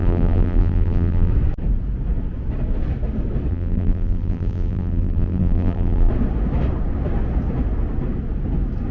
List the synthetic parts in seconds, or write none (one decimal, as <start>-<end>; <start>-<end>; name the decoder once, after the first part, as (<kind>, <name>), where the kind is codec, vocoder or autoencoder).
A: 0.0-1.3 (vocoder, BigVGAN v2); 3.5-6.1

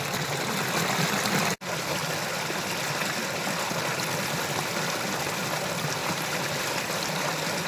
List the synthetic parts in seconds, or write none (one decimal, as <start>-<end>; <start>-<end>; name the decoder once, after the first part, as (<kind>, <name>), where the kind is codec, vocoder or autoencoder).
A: 6.0-6.7 (vocoder, BigVGAN v2)

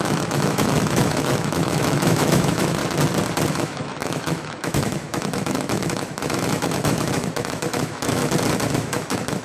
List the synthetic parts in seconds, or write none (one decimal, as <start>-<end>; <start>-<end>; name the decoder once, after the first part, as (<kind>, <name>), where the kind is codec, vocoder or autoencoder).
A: 0.0-2.8 (autoencoder, DAC-VAE); 3.5-8.2; 8.7-9.4

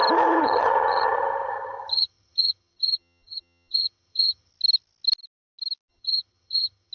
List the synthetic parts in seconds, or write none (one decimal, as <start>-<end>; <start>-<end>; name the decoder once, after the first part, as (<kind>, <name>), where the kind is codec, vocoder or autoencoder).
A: 0.4-4.5 (vocoder, HiFi-GAN); 5.9-6.9

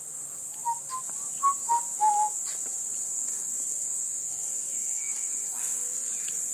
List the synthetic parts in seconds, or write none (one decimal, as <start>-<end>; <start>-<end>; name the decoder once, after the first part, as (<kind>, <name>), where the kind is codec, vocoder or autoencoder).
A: 3.1-6.1 (codec, SNAC)

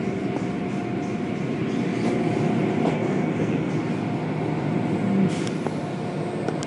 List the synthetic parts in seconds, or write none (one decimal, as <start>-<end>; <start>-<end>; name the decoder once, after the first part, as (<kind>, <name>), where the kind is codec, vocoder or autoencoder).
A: 2.9-3.7 (codec, SNAC)

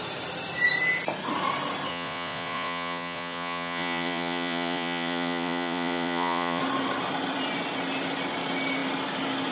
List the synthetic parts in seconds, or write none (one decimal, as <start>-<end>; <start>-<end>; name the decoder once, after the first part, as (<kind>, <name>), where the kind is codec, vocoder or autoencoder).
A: 1.9-6.6 (vocoder, Vocos)

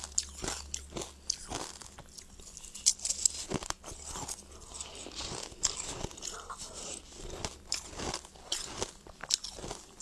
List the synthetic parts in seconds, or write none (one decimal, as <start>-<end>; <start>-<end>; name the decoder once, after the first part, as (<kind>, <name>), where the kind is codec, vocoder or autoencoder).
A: none